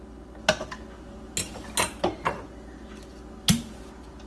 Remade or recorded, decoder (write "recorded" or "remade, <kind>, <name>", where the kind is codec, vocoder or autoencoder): recorded